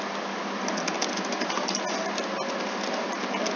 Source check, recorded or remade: recorded